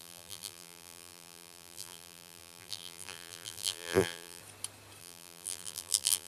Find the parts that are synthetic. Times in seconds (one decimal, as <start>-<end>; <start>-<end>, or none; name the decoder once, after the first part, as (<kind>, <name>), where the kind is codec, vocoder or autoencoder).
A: 0.0-4.4 (vocoder, BigVGAN v2); 5.0-6.3